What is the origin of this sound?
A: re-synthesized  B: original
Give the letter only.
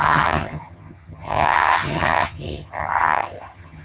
A